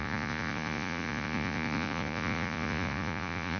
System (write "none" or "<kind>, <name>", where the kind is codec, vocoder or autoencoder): vocoder, Vocos